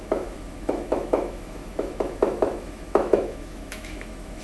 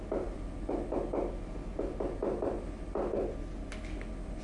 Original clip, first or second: second